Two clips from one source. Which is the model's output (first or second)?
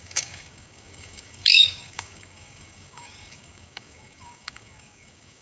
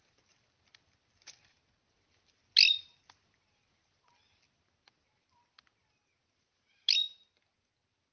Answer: first